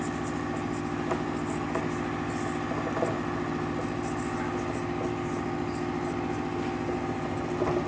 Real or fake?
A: real